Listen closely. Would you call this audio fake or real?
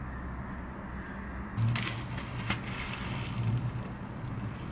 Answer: real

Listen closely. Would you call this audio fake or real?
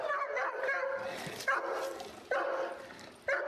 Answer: real